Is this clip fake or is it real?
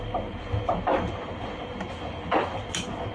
real